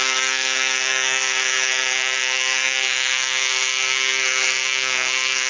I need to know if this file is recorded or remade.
remade